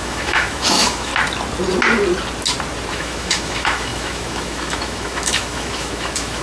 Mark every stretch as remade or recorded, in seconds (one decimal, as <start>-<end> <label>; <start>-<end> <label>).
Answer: 0.0-1.1 remade; 1.1-2.9 recorded; 2.9-6.4 remade